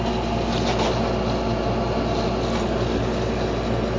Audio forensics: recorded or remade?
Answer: recorded